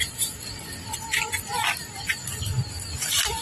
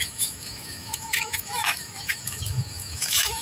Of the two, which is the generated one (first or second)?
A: second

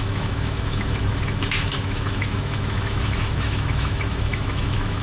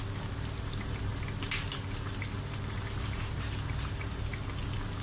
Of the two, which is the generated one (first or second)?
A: first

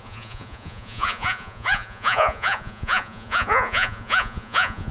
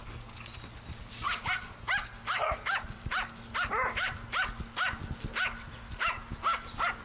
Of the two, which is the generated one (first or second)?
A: first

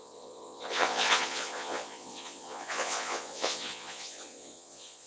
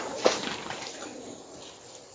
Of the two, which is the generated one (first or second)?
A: first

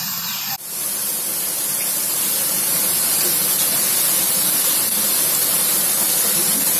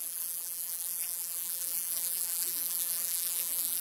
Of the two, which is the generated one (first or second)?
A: second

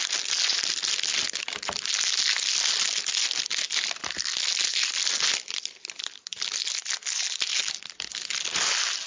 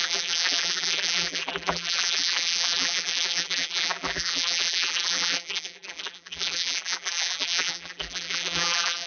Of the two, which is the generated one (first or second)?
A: second